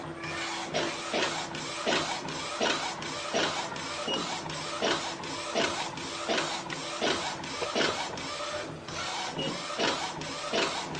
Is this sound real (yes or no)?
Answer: yes